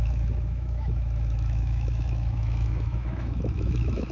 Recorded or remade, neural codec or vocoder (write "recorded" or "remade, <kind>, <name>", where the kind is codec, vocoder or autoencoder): remade, autoencoder, DAC-VAE